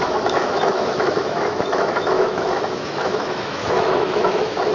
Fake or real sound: fake